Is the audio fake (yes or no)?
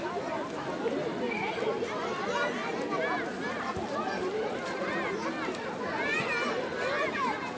no